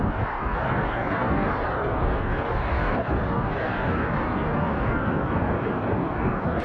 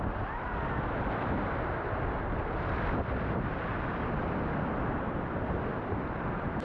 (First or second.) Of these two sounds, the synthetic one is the first